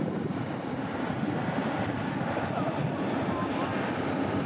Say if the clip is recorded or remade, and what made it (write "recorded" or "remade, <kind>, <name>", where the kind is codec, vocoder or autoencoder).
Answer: recorded